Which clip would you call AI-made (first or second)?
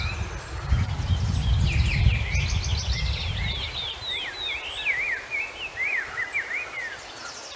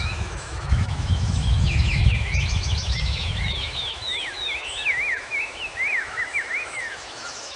second